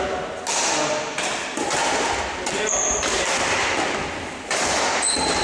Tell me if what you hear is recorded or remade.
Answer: recorded